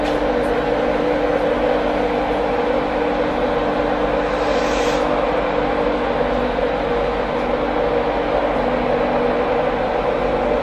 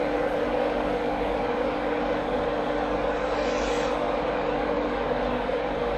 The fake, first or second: second